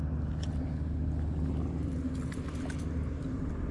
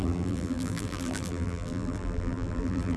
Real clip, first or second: first